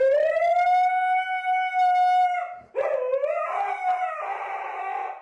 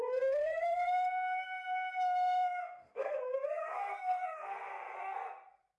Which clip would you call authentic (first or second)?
first